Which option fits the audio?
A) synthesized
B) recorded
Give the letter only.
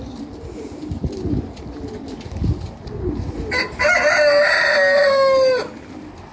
B